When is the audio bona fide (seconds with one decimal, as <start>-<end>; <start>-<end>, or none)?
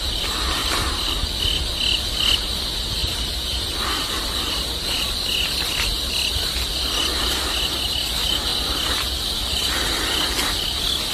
0.0-11.1